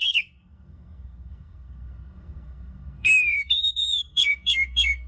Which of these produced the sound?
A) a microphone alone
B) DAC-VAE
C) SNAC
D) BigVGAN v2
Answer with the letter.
C